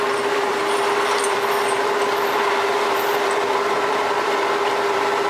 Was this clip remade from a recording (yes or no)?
yes